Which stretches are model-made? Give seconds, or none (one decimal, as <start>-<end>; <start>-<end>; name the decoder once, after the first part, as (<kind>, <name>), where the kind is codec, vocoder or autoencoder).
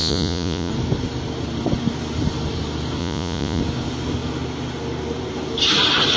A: 0.0-0.7 (vocoder, Vocos); 3.0-3.6